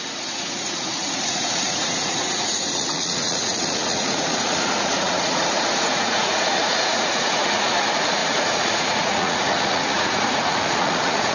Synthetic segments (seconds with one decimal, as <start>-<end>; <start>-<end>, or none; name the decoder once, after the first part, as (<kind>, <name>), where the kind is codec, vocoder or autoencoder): 0.0-11.3 (vocoder, Vocos)